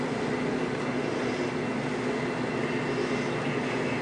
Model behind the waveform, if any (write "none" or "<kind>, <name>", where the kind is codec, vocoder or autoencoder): none